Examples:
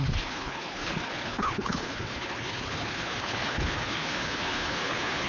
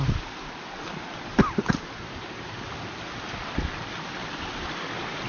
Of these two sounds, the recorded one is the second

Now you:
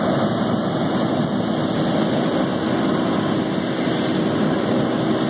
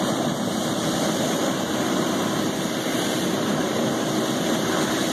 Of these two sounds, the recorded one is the first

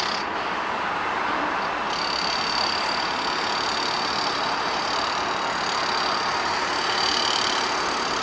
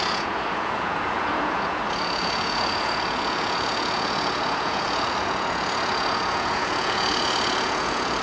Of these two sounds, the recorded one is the first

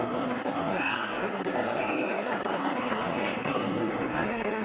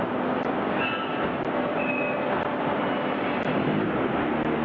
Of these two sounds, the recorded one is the second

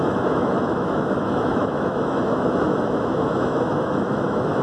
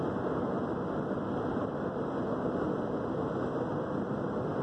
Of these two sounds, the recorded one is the second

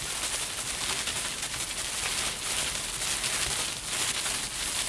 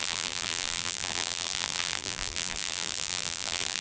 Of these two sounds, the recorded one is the first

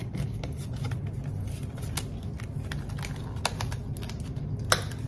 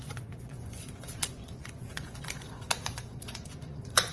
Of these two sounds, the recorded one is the first